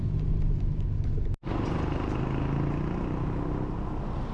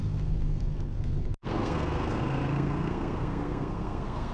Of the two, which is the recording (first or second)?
first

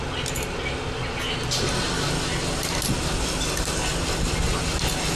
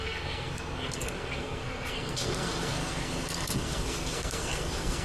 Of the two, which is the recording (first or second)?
first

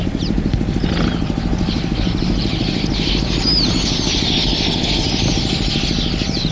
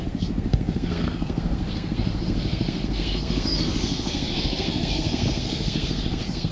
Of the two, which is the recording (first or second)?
first